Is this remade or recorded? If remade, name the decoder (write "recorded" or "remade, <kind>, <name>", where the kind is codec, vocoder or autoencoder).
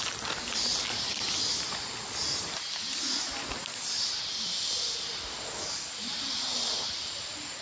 recorded